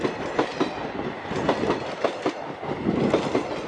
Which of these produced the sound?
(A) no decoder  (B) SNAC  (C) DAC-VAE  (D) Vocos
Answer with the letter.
A